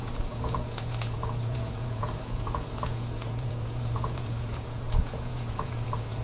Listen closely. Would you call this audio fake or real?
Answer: fake